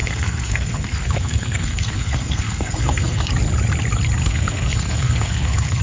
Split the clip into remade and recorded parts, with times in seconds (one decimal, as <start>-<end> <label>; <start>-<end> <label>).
0.0-3.3 remade; 3.3-4.2 recorded; 4.2-5.8 remade